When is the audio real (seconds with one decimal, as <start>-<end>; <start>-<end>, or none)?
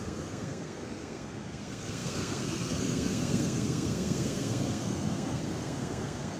none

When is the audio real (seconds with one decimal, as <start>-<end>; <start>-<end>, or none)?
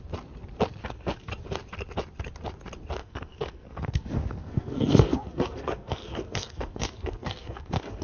0.0-0.8; 1.3-3.0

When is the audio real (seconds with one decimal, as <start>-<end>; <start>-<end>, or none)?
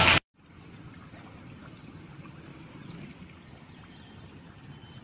0.0-2.5; 3.4-5.0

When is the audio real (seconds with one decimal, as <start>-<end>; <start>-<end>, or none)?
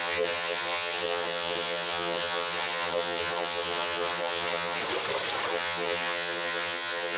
4.8-5.5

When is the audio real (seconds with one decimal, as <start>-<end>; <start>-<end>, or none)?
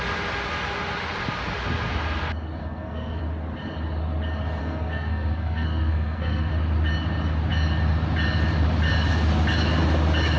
0.0-2.6; 3.2-4.6; 6.5-10.4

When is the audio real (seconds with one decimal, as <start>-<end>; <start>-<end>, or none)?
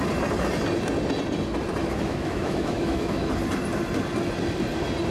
0.0-1.8; 3.3-5.1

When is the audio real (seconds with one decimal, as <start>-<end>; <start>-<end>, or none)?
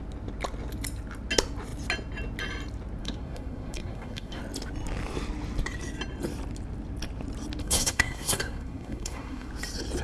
0.0-3.0; 4.4-7.6; 9.5-10.0